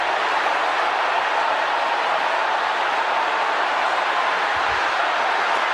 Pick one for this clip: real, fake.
real